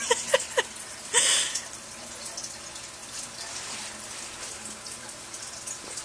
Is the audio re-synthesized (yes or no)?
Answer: no